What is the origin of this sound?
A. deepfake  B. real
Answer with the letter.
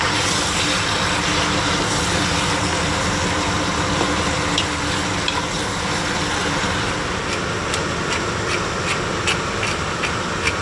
B